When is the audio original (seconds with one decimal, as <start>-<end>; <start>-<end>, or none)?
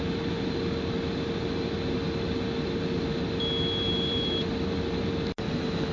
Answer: 0.0-3.9; 4.5-5.9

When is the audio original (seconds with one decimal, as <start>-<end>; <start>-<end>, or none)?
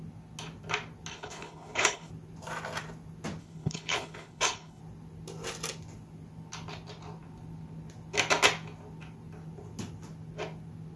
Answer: 0.0-1.1; 2.1-3.4; 4.8-11.0